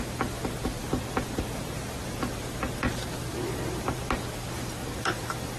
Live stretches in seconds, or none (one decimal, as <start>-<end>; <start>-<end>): 0.0-0.8; 4.2-4.8